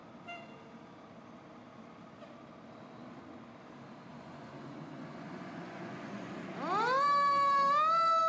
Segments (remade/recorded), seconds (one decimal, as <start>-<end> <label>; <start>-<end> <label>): 0.0-4.1 recorded; 4.1-6.3 remade; 6.3-8.3 recorded